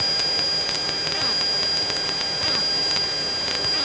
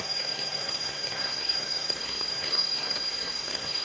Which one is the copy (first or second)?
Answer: second